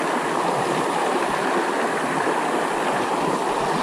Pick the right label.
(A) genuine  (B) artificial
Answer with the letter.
A